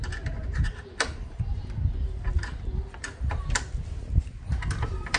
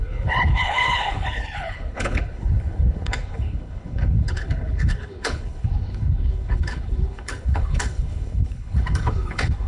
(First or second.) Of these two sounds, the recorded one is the first